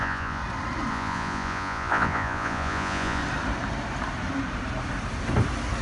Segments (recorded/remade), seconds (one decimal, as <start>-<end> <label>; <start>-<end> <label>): 0.0-0.4 remade; 0.4-0.9 recorded; 0.9-3.2 remade; 3.2-5.8 recorded